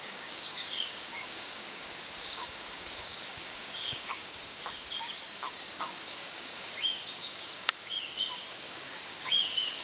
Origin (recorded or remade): remade